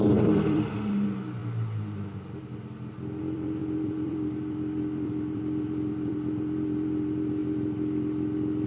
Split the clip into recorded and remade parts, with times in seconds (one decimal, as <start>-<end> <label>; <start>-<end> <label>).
0.0-1.4 remade; 1.4-3.2 recorded; 3.2-7.4 remade; 7.4-8.7 recorded